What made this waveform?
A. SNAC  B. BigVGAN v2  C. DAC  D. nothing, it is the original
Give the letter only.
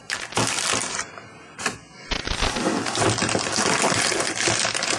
D